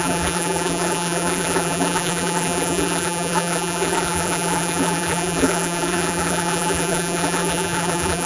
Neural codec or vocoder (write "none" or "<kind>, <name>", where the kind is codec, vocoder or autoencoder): vocoder, BigVGAN v2